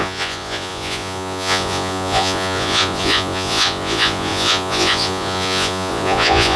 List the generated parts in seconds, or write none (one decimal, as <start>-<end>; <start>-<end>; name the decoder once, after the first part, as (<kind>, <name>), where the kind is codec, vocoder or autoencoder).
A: 0.0-6.6 (vocoder, Vocos)